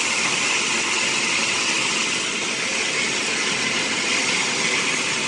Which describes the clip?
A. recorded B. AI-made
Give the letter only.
A